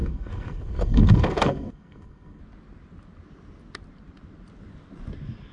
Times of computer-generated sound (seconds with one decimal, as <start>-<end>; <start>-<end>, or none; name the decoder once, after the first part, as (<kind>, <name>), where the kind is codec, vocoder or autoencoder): 0.0-2.4 (codec, SNAC)

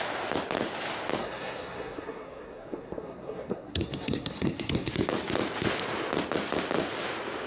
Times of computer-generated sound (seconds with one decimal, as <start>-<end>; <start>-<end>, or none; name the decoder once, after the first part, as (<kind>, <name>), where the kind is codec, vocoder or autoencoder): 1.2-4.9 (codec, SNAC)

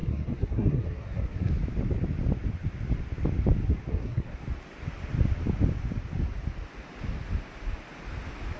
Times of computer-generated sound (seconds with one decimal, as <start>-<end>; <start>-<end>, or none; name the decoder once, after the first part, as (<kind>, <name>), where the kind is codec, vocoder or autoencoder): 0.0-1.5 (codec, SNAC); 3.9-4.4

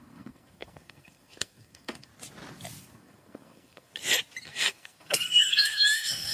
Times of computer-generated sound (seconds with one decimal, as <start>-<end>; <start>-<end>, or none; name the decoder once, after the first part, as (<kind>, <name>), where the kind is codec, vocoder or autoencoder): 0.0-2.1 (codec, SNAC); 2.8-3.9; 4.4-6.3

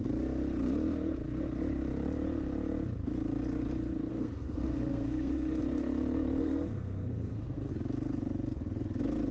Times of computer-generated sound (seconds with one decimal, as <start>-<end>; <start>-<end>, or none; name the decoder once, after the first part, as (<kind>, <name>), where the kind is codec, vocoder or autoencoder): 4.1-5.6 (codec, SNAC); 6.4-7.7